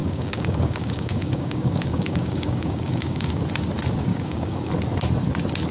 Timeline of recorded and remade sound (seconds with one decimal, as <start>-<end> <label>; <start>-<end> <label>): 0.0-3.4 remade; 3.4-4.1 recorded; 4.1-4.7 remade; 4.7-5.7 recorded